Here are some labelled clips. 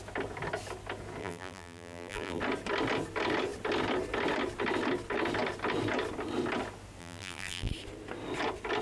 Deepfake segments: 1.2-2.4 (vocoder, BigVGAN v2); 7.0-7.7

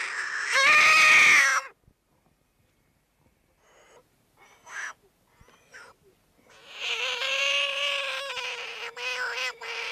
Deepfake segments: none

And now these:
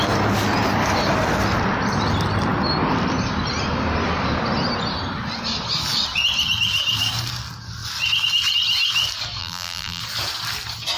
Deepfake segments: 9.4-10.0 (vocoder, BigVGAN v2)

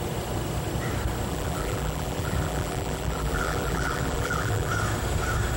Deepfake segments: 1.3-4.7 (vocoder, BigVGAN v2)

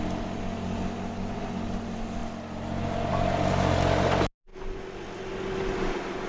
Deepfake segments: none

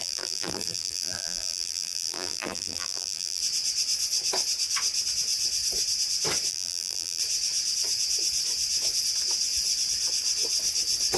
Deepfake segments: 0.0-3.4 (vocoder, BigVGAN v2); 6.5-7.2

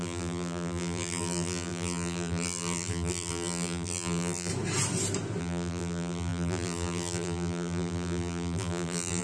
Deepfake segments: 0.0-4.5 (vocoder, BigVGAN v2); 5.4-9.2